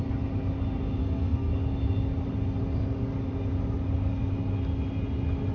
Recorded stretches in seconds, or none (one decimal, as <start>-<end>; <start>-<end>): 0.0-1.0; 1.5-5.5